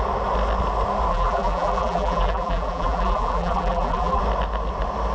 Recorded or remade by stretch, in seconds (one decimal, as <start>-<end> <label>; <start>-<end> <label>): 0.0-1.1 recorded; 1.1-4.2 remade; 4.2-5.1 recorded